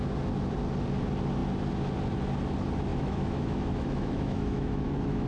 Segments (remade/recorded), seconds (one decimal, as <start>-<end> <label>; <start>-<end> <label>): 0.0-2.9 recorded; 2.9-5.3 remade